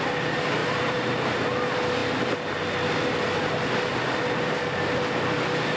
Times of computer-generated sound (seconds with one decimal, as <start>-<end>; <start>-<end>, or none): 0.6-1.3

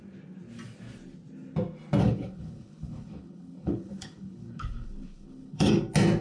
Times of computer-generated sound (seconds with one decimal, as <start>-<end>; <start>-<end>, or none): 2.0-5.7

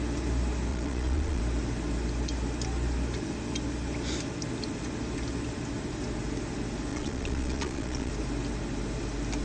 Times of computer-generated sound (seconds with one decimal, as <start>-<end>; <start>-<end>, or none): 0.7-1.4; 6.9-8.1